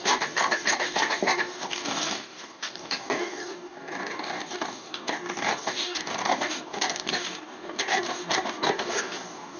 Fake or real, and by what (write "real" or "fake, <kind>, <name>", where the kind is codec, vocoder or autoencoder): fake, codec, DAC